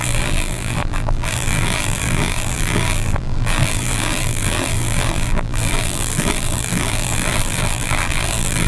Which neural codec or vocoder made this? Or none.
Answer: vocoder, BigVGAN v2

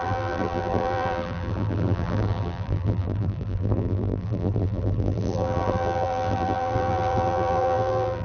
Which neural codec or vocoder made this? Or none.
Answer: vocoder, BigVGAN v2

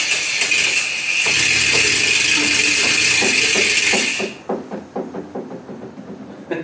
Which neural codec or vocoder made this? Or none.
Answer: none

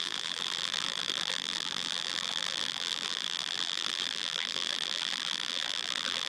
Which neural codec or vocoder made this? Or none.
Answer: vocoder, BigVGAN v2